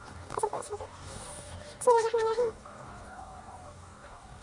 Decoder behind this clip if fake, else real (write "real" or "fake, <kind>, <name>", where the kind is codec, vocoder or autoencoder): fake, codec, DAC